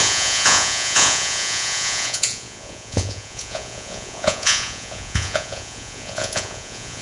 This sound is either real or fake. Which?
fake